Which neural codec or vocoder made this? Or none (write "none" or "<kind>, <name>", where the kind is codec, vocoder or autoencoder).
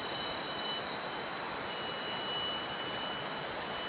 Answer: none